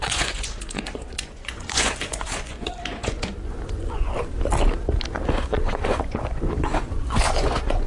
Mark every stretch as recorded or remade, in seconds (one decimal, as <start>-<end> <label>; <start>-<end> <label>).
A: 0.0-4.1 remade; 4.1-5.3 recorded; 5.3-7.9 remade